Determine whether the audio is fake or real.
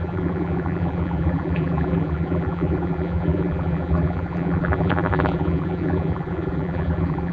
fake